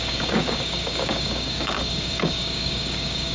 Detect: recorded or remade remade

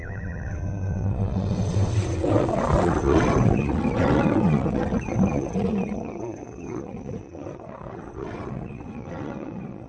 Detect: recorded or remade remade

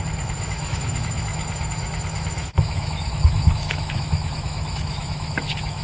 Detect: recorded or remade remade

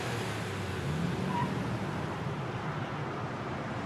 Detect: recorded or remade recorded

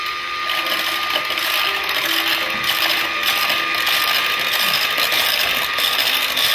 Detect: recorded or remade recorded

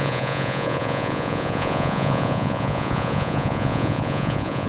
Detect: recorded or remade remade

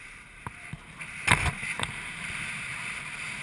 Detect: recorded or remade remade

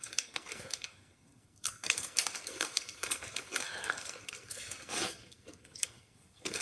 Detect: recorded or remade remade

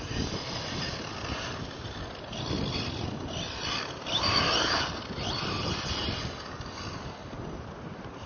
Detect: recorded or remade recorded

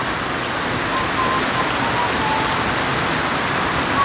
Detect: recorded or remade recorded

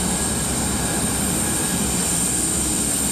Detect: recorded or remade recorded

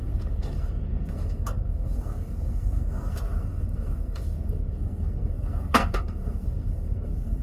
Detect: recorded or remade remade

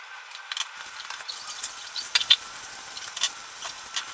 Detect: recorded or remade recorded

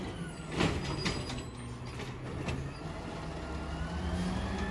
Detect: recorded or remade recorded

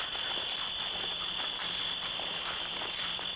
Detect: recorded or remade recorded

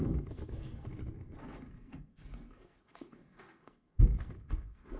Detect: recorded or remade remade